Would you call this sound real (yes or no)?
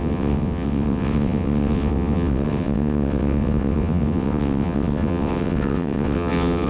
no